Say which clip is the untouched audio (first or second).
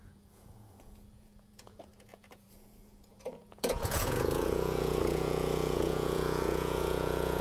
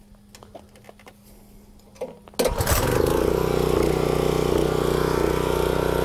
second